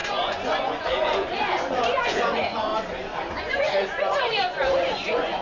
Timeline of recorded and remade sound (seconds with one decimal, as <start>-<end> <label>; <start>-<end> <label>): 0.0-2.7 remade; 2.7-3.3 recorded; 3.3-5.4 remade